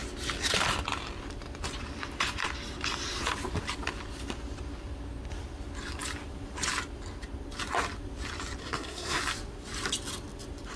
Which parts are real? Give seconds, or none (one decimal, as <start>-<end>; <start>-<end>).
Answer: 0.0-8.6; 9.2-10.8